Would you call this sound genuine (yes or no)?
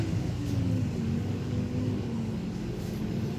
no